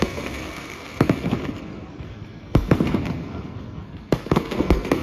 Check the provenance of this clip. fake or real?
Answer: fake